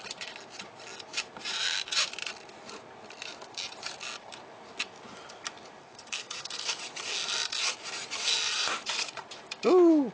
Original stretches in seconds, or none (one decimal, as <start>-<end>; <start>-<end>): 0.0-5.8; 6.8-10.1